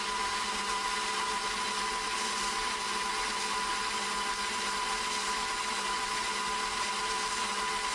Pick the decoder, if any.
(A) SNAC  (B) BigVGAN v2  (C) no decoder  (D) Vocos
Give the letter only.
C